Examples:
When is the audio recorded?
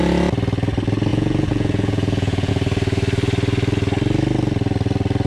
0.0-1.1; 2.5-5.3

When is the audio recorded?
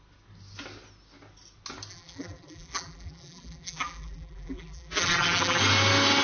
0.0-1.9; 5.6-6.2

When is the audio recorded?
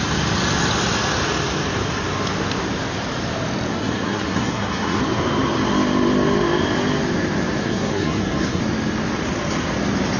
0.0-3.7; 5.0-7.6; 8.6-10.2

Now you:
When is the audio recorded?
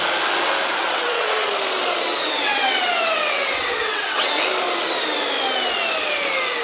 0.0-0.8; 1.5-2.1; 4.3-6.6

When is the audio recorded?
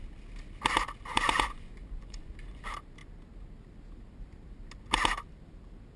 0.0-1.1; 2.3-6.0